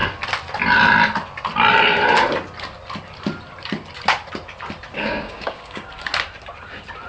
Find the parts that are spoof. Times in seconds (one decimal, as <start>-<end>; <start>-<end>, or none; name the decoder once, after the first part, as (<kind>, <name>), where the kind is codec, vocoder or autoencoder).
4.9-5.9 (codec, DAC)